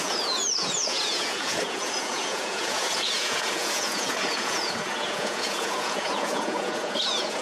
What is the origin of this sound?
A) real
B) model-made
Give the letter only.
B